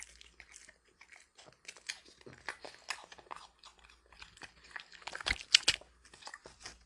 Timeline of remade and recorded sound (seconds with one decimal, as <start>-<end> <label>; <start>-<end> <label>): 0.0-6.9 recorded